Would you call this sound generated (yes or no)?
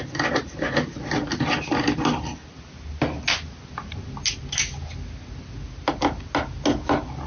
no